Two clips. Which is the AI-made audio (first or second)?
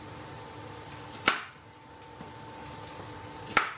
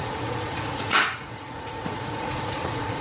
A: second